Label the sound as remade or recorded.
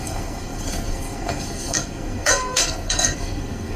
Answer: remade